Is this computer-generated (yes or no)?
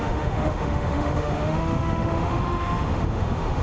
yes